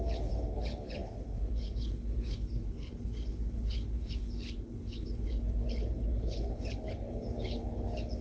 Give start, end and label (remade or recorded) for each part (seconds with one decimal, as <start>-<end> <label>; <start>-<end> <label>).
0.0-8.2 remade